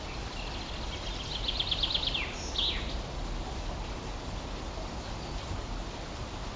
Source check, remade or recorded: recorded